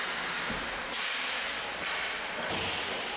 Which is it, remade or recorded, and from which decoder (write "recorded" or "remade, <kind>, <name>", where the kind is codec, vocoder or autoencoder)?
recorded